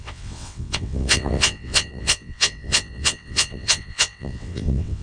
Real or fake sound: fake